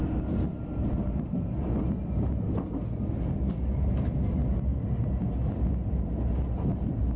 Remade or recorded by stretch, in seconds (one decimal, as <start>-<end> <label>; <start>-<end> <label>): 0.0-7.2 recorded